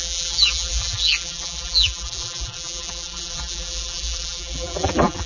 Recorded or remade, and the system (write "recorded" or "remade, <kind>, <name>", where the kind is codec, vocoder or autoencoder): remade, vocoder, BigVGAN v2